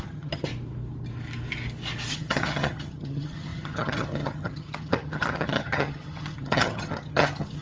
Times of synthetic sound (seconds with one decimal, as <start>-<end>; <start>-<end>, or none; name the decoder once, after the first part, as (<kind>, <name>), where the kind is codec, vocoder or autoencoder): 0.0-0.5 (vocoder, HiFi-GAN); 2.1-7.6